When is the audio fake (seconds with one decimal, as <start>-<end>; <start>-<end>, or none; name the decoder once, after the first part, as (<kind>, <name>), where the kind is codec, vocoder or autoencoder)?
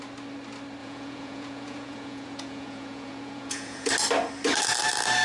0.8-3.9 (vocoder, Vocos)